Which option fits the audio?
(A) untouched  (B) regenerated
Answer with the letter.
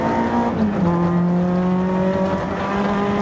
A